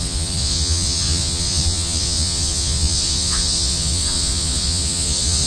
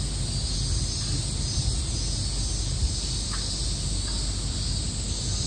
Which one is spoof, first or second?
first